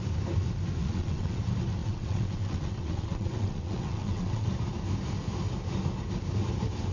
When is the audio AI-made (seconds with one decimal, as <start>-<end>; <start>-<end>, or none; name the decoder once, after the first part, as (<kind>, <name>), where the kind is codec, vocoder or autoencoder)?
0.8-1.4 (vocoder, WaveNeXt); 1.8-4.5